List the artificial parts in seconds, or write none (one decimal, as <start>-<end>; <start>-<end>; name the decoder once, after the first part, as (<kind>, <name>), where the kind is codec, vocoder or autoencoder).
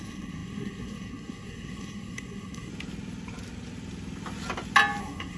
0.0-2.7 (codec, SNAC); 5.0-5.4